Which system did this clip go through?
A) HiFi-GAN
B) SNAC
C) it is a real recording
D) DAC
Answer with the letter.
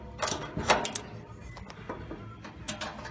C